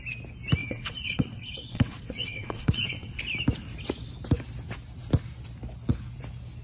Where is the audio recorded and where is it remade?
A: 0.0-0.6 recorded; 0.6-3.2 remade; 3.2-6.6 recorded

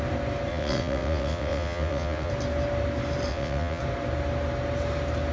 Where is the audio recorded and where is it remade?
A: 0.0-0.5 recorded; 0.5-2.3 remade; 2.3-3.3 recorded; 3.3-3.8 remade; 3.8-5.3 recorded